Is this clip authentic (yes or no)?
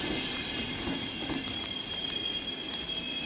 yes